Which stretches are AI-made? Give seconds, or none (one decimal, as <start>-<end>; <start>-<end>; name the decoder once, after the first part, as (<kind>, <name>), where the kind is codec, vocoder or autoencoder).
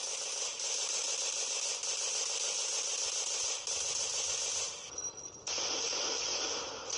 none